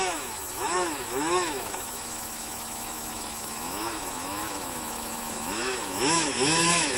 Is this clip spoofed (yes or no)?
yes